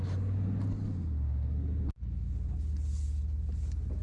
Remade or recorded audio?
recorded